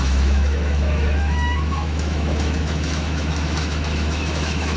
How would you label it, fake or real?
fake